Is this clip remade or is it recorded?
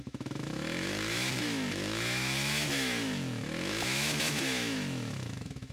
remade